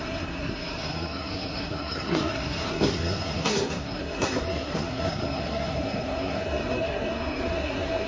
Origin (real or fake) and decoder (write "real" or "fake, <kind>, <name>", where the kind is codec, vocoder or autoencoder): fake, codec, SNAC